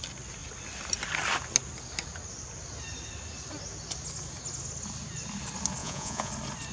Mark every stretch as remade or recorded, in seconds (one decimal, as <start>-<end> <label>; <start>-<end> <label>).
0.0-5.8 recorded; 5.8-6.3 remade; 6.3-6.7 recorded